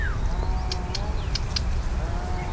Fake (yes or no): no